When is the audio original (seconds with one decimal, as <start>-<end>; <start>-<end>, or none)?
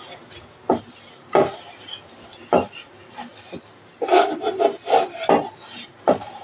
0.0-6.4